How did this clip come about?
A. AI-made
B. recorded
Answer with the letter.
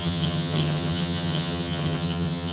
A